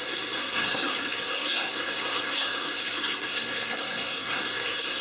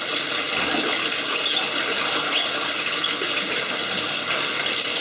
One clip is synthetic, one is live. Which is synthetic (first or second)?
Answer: first